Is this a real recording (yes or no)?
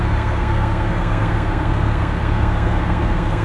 no